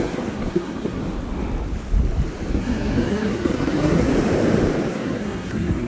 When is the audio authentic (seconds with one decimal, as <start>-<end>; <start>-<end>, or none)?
1.0-2.5; 4.1-4.9